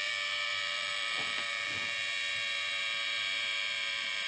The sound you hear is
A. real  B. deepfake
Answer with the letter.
B